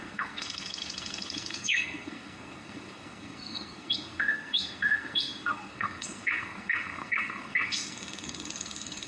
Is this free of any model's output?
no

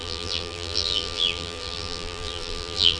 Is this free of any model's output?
no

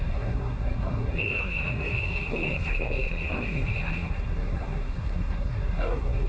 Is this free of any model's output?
no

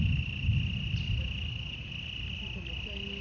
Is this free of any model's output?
yes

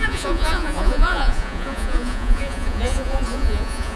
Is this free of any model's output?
no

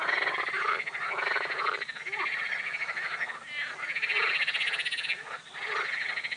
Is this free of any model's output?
yes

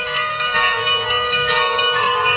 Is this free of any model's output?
no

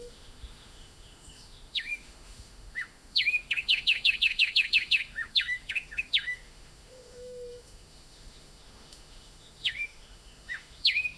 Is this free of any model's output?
no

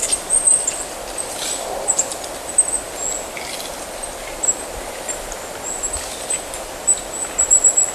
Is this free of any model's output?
yes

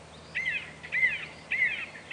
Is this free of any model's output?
yes